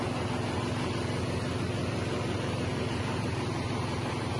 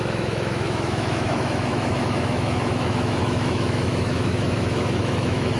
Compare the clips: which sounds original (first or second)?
first